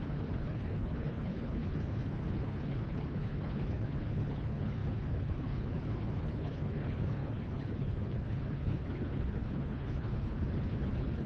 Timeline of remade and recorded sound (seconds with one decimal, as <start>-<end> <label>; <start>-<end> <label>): 0.0-11.3 remade